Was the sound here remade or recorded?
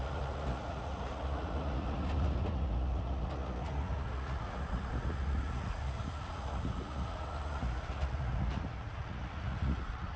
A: remade